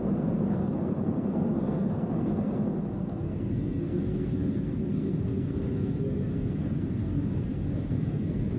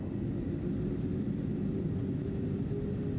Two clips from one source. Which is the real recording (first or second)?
second